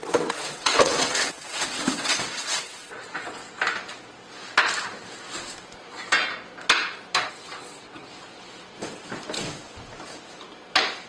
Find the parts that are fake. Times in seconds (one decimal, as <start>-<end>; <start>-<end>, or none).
0.0-3.4; 7.3-8.0

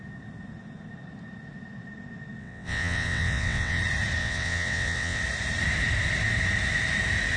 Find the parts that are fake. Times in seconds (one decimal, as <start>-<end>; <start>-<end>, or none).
2.4-3.8; 4.2-5.2

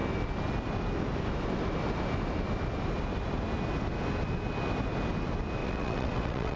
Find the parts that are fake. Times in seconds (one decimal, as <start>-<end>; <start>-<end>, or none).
5.6-6.6

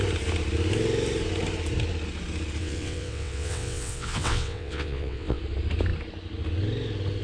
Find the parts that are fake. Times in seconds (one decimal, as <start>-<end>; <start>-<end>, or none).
2.6-5.4

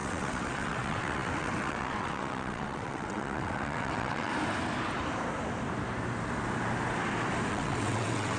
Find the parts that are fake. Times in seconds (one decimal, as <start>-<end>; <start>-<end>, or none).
0.0-4.3; 7.5-8.4

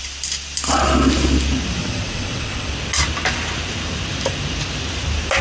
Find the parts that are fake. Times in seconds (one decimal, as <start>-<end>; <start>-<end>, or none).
1.8-2.7

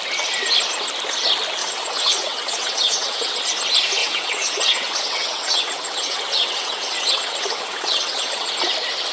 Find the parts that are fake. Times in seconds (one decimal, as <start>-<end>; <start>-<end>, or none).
1.6-3.4; 4.0-8.5